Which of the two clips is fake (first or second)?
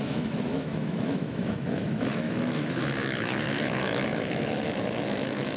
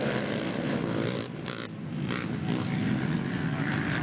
first